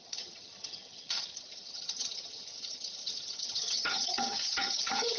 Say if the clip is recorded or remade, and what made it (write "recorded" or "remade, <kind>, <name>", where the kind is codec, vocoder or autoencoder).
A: remade, vocoder, HiFi-GAN